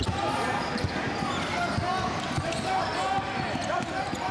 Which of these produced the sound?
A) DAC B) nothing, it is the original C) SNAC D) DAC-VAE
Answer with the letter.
B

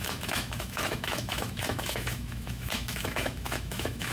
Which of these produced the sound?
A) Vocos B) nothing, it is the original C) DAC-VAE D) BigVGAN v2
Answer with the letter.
C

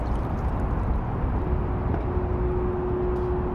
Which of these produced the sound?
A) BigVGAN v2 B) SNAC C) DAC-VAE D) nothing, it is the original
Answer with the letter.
D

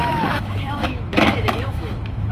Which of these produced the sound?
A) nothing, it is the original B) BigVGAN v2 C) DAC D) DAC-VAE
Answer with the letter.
D